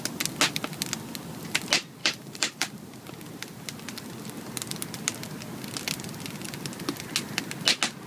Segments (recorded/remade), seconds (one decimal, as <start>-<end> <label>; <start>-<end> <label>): 0.0-2.0 recorded; 2.0-2.7 remade; 2.7-8.1 recorded